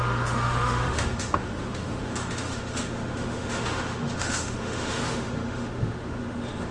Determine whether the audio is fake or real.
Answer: fake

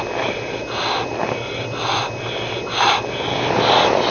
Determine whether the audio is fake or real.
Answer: real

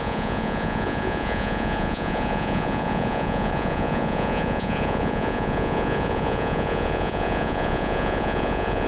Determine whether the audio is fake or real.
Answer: fake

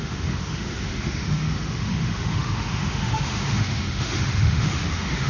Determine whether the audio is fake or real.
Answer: fake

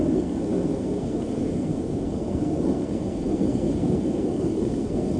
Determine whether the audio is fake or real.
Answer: fake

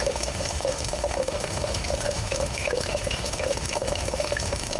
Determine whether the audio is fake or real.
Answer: fake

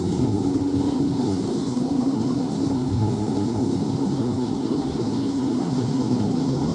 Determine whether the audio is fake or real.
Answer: fake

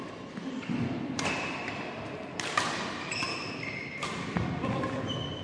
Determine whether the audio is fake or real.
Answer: real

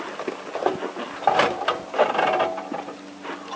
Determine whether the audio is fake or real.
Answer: real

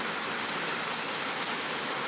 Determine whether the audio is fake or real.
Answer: real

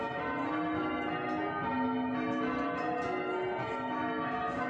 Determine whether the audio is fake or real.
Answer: real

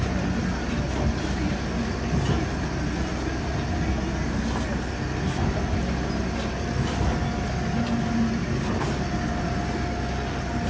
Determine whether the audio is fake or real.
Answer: real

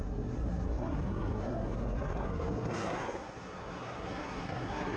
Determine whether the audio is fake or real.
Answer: fake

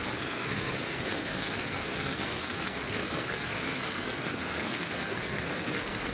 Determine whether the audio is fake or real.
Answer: fake